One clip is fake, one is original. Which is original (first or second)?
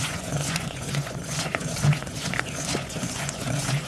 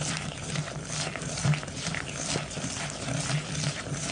second